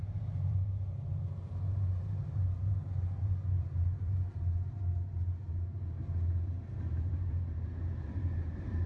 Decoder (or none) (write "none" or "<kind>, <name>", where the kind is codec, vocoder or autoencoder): vocoder, BigVGAN v2